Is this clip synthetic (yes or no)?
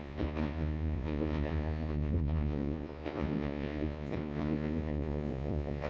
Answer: yes